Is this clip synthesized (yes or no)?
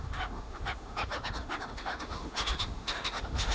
yes